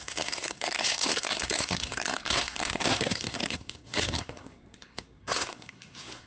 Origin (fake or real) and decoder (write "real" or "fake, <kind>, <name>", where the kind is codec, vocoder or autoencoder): fake, codec, SNAC